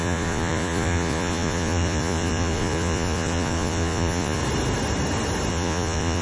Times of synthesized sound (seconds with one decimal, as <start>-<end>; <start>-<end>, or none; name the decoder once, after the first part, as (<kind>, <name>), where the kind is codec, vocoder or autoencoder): 0.0-4.4 (vocoder, Vocos); 5.5-6.2